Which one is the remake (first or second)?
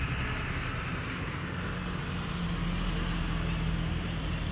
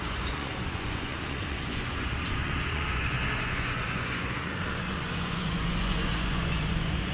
second